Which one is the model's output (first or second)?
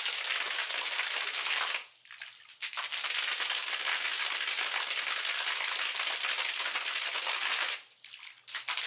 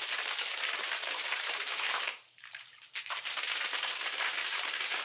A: second